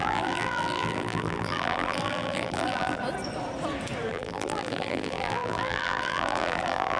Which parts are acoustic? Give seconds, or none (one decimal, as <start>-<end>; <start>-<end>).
3.0-4.1